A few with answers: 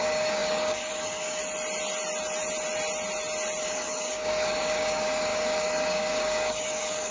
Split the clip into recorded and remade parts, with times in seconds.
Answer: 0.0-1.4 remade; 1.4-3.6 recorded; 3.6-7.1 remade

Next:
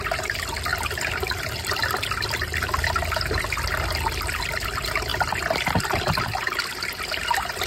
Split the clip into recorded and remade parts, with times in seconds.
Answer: 0.0-7.7 recorded

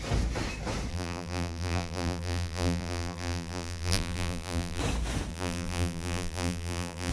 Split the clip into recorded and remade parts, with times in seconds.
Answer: 0.0-0.9 recorded; 0.9-4.8 remade; 4.8-5.3 recorded; 5.3-7.1 remade

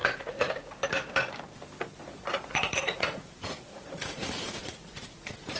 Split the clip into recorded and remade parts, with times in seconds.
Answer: 0.0-0.7 remade; 0.7-2.1 recorded; 2.1-5.6 remade

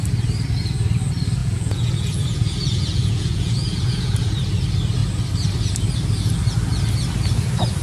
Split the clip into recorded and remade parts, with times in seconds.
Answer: 0.0-1.4 recorded; 1.4-4.2 remade; 4.2-7.8 recorded

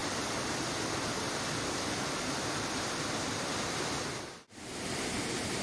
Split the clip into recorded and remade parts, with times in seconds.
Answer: 0.0-5.6 recorded

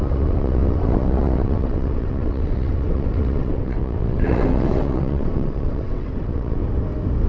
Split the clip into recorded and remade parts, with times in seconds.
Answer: 0.0-6.6 remade; 6.6-7.3 recorded